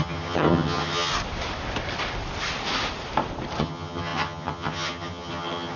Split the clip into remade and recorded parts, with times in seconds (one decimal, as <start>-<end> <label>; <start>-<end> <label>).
0.0-1.1 remade; 1.1-3.6 recorded; 3.6-5.8 remade